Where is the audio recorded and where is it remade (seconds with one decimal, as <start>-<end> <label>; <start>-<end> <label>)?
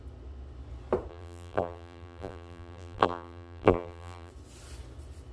0.0-1.1 recorded; 1.1-4.3 remade; 4.3-5.3 recorded